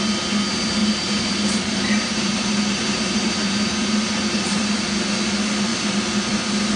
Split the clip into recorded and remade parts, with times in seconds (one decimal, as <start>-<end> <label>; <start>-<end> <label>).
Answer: 0.0-0.8 recorded; 0.8-4.9 remade; 4.9-6.8 recorded